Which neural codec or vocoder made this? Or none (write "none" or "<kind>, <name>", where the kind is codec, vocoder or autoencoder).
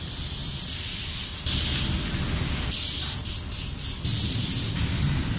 none